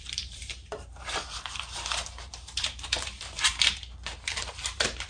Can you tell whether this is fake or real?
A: fake